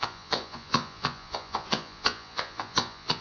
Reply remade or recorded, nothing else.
remade